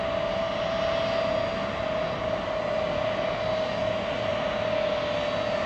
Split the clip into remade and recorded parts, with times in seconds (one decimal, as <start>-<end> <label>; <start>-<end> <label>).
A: 0.0-5.7 recorded